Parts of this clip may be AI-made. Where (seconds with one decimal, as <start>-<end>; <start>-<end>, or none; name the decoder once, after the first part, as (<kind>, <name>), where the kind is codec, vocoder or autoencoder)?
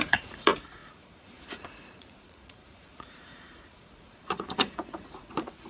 0.0-5.7 (vocoder, Vocos)